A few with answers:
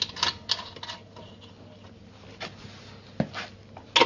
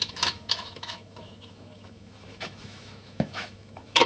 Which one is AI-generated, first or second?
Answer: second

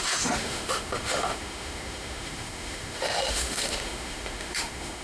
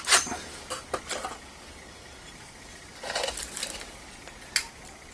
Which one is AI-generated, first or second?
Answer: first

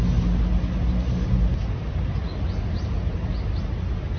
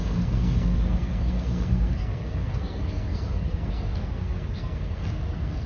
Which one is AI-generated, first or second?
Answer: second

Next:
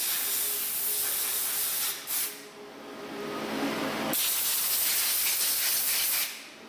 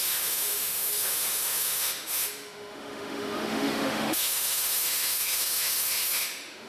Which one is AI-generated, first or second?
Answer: second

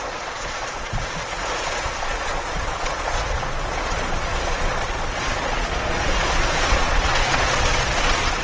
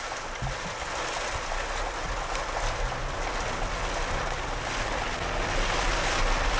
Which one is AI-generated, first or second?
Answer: first